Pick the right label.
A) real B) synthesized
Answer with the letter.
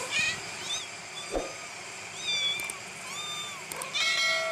A